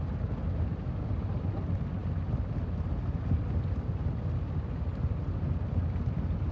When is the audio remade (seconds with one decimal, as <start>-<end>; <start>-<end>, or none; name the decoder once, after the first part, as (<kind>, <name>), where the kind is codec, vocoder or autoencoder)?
none